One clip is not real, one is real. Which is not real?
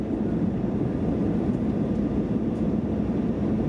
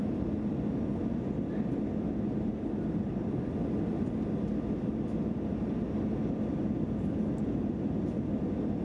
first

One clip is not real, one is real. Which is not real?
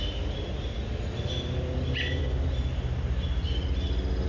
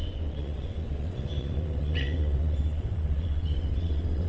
second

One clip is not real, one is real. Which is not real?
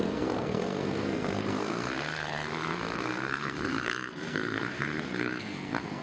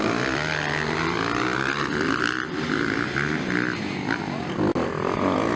first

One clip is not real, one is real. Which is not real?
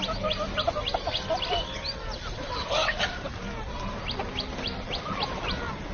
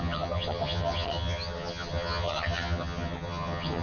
second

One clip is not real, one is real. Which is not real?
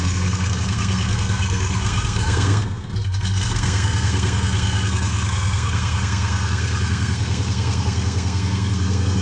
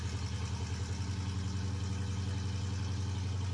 first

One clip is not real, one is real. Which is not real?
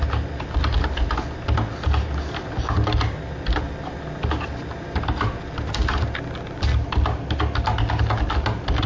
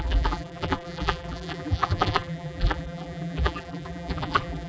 second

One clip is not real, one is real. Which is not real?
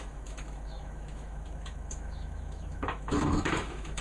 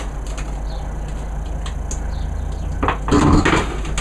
first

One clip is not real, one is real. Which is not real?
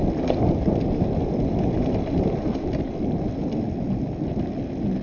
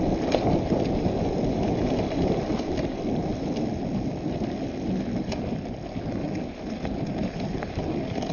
second